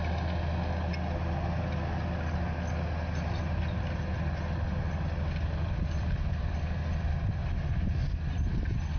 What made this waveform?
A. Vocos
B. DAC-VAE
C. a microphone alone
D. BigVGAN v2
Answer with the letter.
C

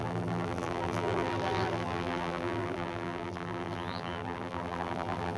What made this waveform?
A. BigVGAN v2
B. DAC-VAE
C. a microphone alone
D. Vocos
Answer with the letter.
A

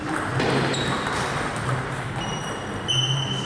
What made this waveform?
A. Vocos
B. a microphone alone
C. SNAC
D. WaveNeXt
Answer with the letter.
B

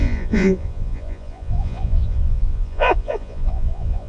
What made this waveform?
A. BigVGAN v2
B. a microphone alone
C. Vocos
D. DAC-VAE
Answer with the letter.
C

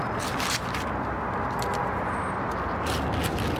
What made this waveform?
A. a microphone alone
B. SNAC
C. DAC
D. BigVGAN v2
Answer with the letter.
A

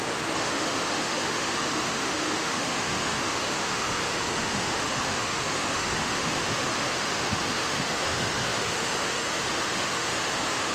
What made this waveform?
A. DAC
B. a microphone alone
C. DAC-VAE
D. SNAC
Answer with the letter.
C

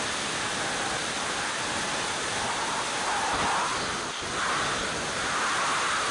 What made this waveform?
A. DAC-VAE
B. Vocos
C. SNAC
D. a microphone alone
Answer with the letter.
D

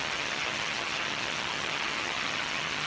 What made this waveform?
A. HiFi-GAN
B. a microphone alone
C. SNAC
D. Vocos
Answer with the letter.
A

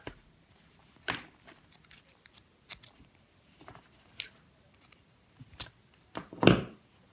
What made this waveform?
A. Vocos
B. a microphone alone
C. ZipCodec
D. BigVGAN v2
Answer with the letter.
D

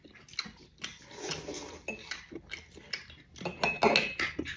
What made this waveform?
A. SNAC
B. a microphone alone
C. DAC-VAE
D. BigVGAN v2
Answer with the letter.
B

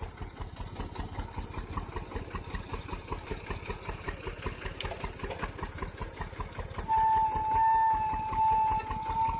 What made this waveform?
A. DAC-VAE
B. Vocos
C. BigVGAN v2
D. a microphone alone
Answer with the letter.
D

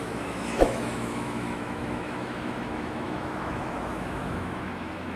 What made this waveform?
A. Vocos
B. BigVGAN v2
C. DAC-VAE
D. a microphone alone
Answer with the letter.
C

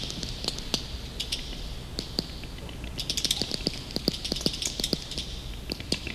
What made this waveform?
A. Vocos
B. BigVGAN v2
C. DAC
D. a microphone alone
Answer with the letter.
D